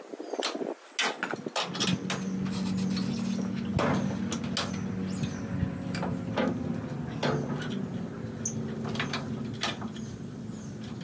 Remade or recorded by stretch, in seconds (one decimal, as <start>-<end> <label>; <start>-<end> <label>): 0.0-11.0 recorded